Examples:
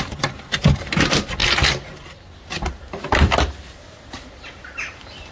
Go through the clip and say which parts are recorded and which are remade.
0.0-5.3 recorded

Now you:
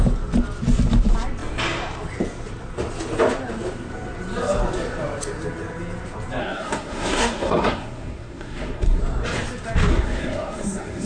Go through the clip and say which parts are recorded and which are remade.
0.0-6.4 recorded; 6.4-9.0 remade; 9.0-9.9 recorded; 9.9-11.1 remade

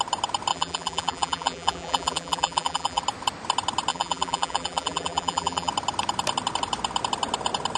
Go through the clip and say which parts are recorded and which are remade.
0.0-0.5 recorded; 0.5-3.0 remade; 3.0-3.9 recorded; 3.9-5.7 remade; 5.7-7.8 recorded

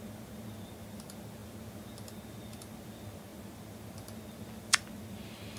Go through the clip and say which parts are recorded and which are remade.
0.0-5.6 recorded